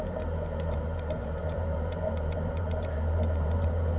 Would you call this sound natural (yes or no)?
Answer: no